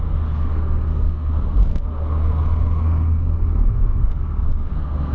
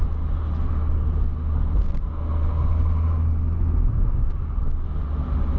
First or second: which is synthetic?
first